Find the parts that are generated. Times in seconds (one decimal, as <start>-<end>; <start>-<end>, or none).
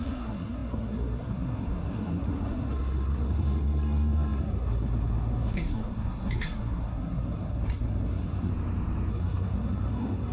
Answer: 0.0-8.5; 9.1-10.3